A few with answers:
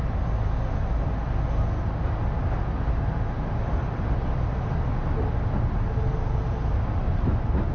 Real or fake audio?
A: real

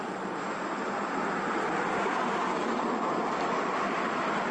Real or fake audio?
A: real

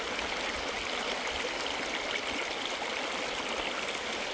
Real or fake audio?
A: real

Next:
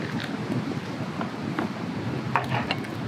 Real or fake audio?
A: real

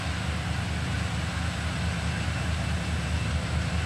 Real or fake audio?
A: real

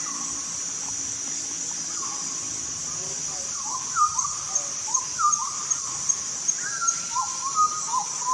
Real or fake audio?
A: real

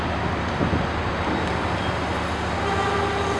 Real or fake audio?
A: real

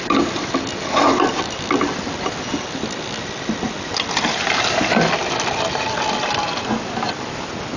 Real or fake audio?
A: real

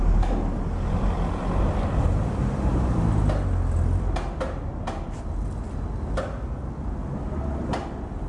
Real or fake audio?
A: real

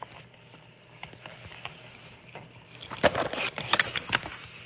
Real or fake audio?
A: real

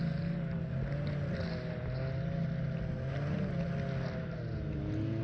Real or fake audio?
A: real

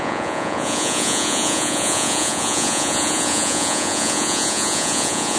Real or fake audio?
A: fake